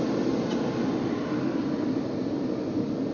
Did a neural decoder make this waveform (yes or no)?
no